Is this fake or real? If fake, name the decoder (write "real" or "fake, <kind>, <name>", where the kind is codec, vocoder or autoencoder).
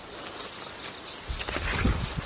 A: real